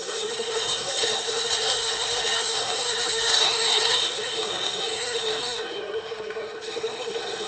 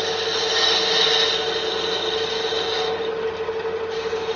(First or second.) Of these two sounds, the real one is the second